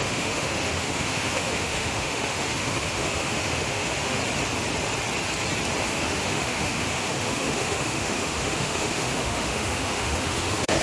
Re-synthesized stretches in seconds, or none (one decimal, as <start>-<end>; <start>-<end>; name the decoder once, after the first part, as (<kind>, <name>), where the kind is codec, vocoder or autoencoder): 0.0-4.2 (autoencoder, DAC-VAE); 5.8-10.8